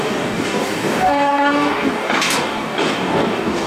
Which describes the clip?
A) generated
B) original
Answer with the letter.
A